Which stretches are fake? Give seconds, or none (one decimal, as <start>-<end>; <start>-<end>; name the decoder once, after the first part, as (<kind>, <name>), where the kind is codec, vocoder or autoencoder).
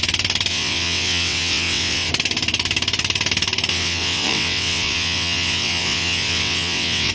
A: 0.5-2.1 (vocoder, WaveNeXt); 3.7-7.1